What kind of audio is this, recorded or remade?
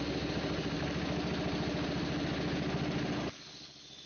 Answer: recorded